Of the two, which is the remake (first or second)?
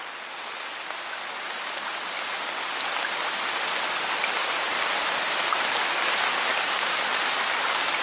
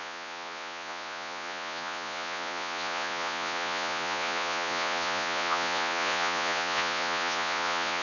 second